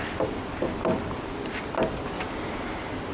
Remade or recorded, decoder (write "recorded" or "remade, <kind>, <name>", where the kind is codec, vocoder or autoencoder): recorded